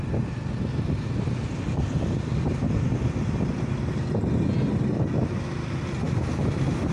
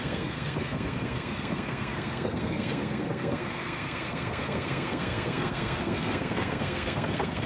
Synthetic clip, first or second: second